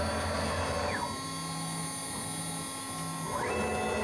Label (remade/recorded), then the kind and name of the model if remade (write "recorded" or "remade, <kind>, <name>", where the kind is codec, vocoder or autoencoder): recorded